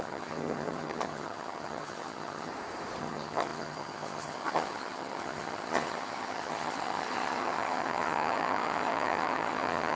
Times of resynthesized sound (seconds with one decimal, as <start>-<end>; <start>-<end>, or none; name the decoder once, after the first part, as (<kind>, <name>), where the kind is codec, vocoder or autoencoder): 0.0-2.5 (vocoder, HiFi-GAN); 3.0-10.0